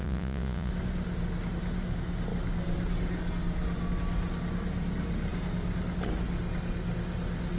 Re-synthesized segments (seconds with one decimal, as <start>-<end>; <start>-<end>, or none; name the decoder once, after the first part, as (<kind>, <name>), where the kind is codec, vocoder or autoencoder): 0.0-0.7 (vocoder, Vocos)